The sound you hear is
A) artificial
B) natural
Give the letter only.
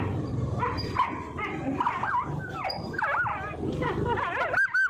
B